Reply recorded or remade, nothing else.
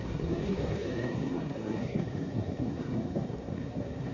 remade